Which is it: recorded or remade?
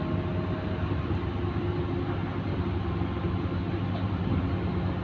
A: recorded